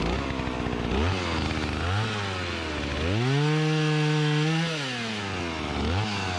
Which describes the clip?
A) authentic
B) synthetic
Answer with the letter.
A